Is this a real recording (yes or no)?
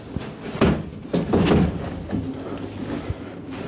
yes